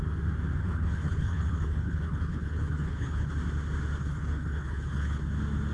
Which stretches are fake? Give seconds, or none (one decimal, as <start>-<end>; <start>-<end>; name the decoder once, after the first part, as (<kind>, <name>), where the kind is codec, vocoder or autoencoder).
0.6-3.3 (codec, HILCodec); 4.0-5.2